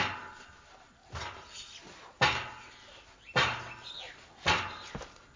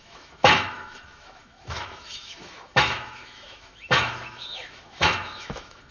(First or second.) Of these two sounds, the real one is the first